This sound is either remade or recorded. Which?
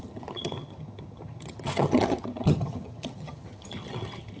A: remade